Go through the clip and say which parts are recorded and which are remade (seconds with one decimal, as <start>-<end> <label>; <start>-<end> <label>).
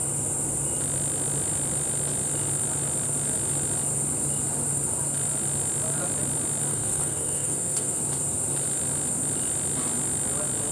0.0-6.7 recorded; 6.7-7.9 remade; 7.9-10.7 recorded